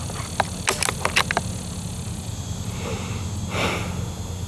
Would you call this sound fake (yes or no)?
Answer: no